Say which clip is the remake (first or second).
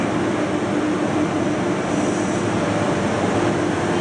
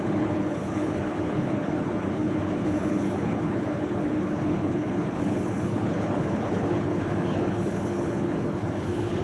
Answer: second